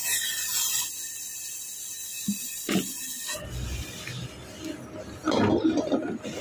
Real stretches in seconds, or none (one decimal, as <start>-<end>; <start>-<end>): 0.0-6.4